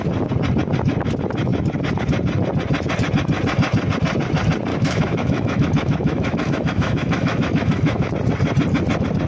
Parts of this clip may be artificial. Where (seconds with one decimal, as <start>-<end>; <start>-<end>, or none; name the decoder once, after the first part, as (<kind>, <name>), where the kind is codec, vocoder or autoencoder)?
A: 4.7-8.1 (autoencoder, DAC-VAE)